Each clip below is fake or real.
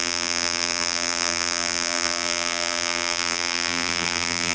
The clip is fake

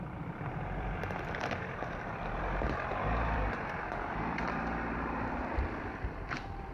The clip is fake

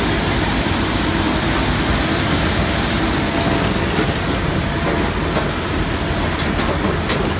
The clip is real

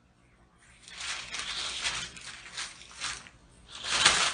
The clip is real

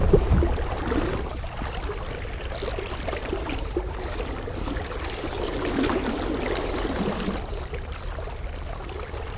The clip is real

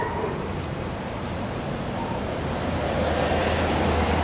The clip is fake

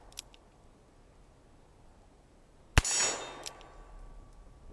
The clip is real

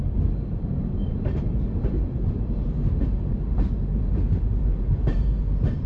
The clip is fake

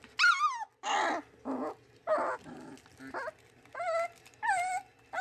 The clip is real